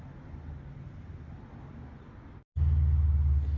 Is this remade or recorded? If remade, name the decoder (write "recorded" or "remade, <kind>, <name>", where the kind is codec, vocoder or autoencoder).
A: recorded